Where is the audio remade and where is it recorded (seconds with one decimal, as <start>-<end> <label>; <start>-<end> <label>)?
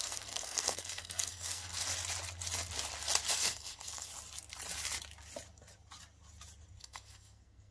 0.0-1.9 remade; 1.9-3.3 recorded; 3.3-4.1 remade; 4.1-6.8 recorded; 6.8-7.7 remade